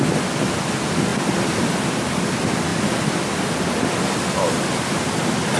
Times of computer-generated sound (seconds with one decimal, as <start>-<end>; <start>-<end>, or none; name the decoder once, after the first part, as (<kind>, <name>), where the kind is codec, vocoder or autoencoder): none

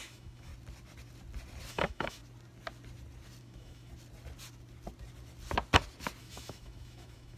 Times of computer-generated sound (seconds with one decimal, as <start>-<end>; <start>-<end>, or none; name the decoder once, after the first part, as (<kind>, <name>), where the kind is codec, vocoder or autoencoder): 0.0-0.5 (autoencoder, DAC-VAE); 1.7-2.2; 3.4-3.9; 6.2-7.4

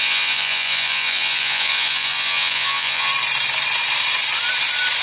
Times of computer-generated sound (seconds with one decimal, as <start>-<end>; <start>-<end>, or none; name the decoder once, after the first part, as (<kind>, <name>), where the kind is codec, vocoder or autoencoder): 0.0-3.1 (vocoder, Vocos)

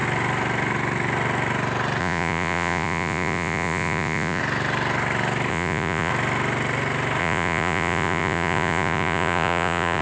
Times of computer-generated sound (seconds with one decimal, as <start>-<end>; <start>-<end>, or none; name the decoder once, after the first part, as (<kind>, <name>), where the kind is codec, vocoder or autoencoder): 2.0-4.4 (vocoder, Vocos); 5.5-6.1; 7.2-10.0

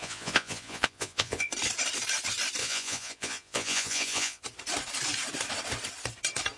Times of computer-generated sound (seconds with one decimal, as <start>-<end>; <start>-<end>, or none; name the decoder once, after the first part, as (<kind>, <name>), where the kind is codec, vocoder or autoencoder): 0.0-1.5 (vocoder, Vocos); 2.6-4.4

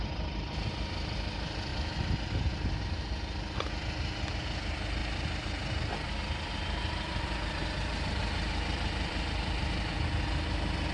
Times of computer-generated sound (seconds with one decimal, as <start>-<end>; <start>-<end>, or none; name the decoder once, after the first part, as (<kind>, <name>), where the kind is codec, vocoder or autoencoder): 1.7-2.8 (vocoder, BigVGAN v2); 5.0-10.1

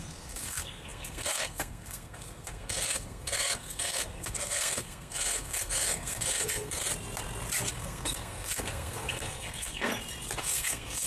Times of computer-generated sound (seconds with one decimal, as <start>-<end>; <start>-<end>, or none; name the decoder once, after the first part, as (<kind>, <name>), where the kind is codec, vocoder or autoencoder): 0.0-6.9 (codec, SNAC); 7.7-9.9; 10.4-11.1